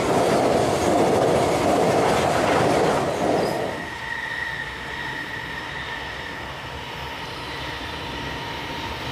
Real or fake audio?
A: real